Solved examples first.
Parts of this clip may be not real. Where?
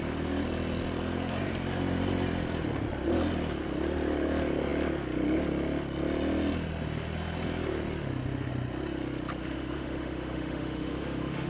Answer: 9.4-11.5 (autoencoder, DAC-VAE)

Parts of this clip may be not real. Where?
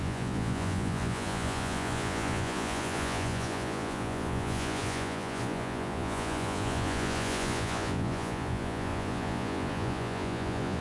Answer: 0.0-10.8 (vocoder, Vocos)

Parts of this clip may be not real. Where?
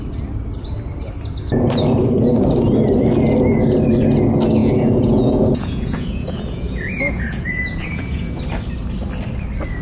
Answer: 4.6-8.4 (vocoder, Vocos)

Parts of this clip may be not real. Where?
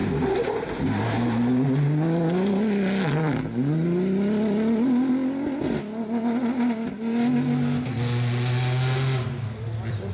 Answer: none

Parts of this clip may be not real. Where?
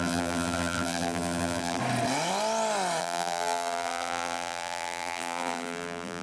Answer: 0.0-1.8 (vocoder, BigVGAN v2); 3.0-6.2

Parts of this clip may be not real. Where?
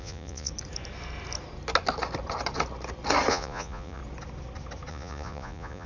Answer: 0.0-0.5 (vocoder, Vocos); 3.3-4.0; 4.9-5.9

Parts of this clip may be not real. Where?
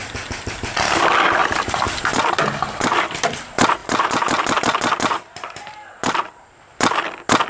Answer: 1.4-3.2 (vocoder, BigVGAN v2); 3.8-6.5